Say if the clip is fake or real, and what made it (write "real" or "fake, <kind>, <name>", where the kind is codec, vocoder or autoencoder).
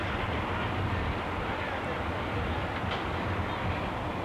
real